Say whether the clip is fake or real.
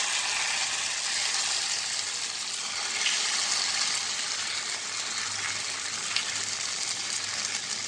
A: real